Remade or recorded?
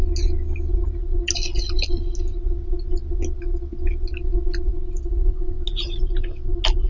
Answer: recorded